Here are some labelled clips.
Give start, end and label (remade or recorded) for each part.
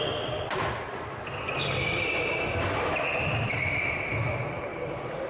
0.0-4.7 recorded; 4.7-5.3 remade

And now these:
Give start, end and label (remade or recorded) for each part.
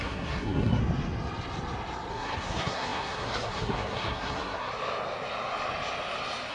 0.0-0.8 remade; 0.8-2.1 recorded; 2.1-4.7 remade; 4.7-6.5 recorded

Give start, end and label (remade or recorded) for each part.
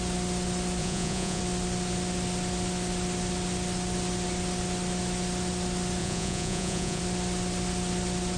0.0-0.8 recorded; 0.8-1.4 remade; 1.4-6.0 recorded; 6.0-7.0 remade; 7.0-8.4 recorded